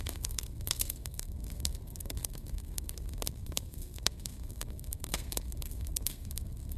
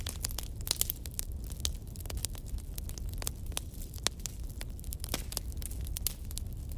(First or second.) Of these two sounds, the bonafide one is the second